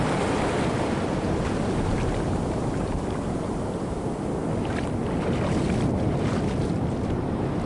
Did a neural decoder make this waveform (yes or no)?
no